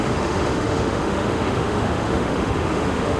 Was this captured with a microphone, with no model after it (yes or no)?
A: no